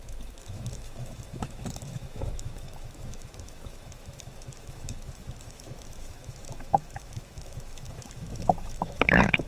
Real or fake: fake